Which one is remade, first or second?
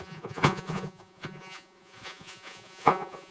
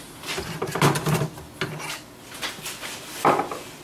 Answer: first